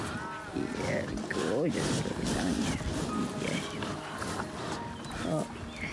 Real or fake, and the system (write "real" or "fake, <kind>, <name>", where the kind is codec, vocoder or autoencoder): real